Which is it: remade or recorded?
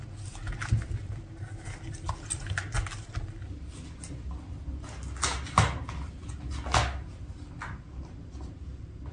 recorded